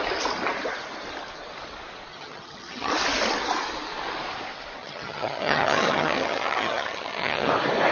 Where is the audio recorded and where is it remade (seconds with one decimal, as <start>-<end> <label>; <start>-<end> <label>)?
0.0-2.1 recorded; 2.1-2.9 remade; 2.9-4.8 recorded; 4.8-7.5 remade; 7.5-7.9 recorded